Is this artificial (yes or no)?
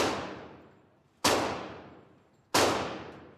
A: no